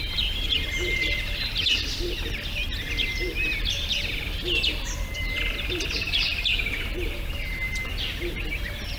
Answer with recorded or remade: remade